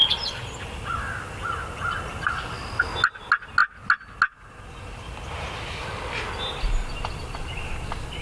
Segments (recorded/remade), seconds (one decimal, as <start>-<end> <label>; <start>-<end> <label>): 0.0-0.6 remade; 0.6-8.2 recorded